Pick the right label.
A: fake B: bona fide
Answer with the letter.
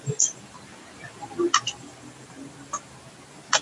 B